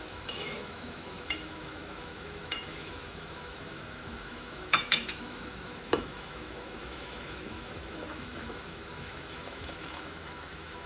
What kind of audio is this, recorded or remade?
remade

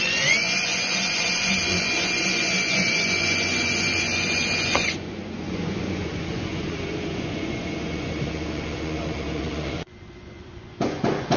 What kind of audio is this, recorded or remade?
remade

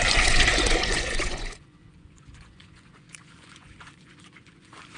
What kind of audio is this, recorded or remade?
remade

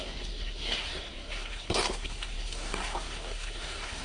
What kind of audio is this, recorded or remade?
remade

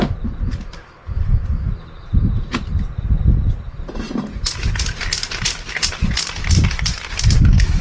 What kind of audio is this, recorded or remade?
recorded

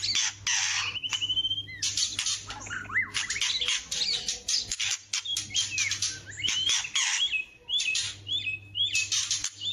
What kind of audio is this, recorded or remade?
recorded